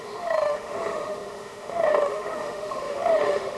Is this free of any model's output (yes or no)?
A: no